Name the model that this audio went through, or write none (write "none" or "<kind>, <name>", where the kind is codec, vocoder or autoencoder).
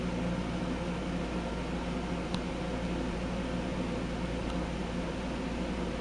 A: none